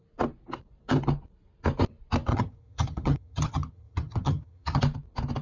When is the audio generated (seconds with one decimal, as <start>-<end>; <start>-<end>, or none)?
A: 2.3-4.8